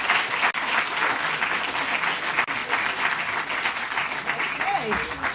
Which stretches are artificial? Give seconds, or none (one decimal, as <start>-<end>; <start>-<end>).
none